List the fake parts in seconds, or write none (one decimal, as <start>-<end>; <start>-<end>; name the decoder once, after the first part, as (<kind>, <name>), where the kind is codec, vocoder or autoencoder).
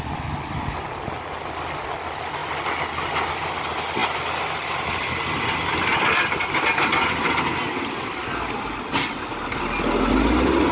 none